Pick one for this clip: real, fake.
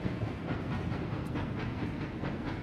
fake